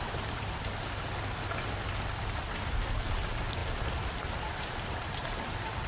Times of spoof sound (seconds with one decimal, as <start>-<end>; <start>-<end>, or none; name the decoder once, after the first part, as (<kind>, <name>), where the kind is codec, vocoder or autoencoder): none